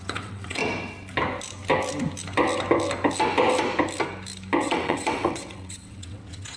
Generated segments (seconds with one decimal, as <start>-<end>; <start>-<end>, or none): 0.0-0.6; 4.6-6.6